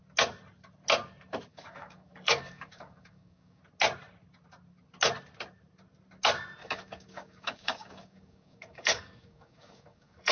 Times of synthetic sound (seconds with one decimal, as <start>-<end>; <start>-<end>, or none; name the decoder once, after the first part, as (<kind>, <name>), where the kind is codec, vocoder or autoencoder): 1.5-3.6 (codec, DAC); 6.6-10.3